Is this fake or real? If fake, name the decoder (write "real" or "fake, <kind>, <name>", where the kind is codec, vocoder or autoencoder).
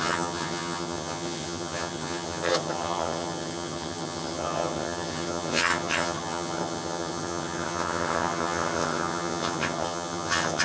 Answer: fake, vocoder, HiFi-GAN